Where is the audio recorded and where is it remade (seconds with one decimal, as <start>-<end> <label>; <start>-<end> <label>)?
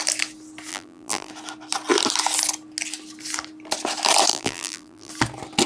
0.0-0.7 recorded; 0.7-1.3 remade; 1.3-4.3 recorded; 4.3-5.1 remade; 5.1-5.7 recorded